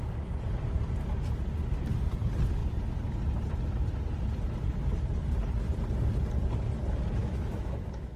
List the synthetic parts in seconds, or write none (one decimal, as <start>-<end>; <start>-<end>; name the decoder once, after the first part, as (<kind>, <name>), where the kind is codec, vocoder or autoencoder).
7.2-8.2 (autoencoder, DAC-VAE)